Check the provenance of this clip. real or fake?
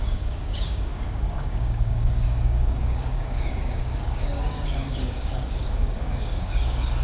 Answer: fake